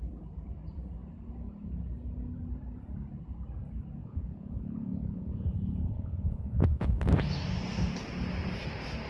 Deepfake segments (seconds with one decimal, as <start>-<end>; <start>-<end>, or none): 4.0-6.9